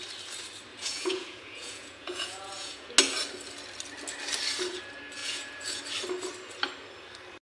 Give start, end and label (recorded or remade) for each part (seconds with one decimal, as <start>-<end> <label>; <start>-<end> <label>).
0.0-0.7 recorded; 0.7-2.9 remade; 2.9-5.2 recorded; 5.2-5.8 remade; 5.8-7.4 recorded